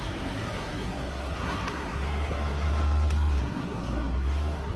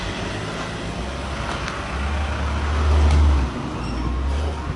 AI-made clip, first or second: first